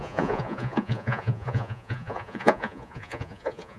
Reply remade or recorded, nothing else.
remade